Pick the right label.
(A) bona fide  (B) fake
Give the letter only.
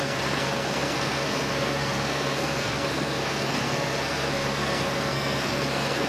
B